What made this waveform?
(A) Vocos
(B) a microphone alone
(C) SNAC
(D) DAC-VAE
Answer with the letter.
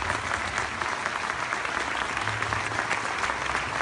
B